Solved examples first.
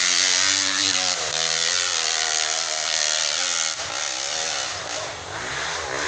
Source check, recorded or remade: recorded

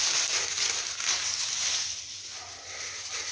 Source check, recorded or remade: recorded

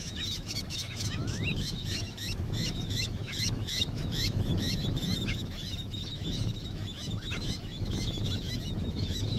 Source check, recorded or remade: remade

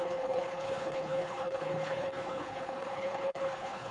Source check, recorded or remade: remade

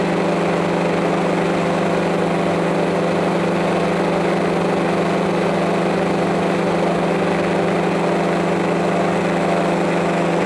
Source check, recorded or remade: recorded